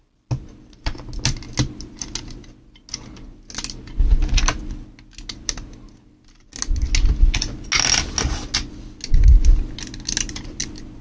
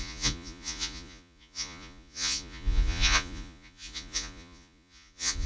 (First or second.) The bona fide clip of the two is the first